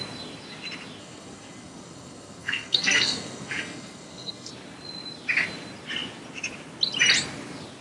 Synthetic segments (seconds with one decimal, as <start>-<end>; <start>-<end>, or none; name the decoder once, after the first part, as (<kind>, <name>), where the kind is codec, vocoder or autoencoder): 1.0-4.5 (codec, SNAC)